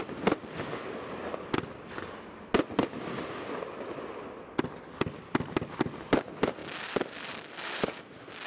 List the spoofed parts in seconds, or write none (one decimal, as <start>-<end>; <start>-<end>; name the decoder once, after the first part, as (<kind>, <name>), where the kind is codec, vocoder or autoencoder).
none